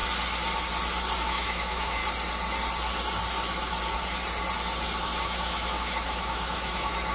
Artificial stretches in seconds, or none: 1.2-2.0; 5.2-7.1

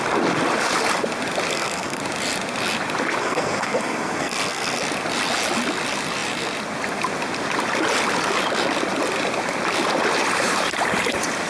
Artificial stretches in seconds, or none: 1.5-2.0; 3.2-4.8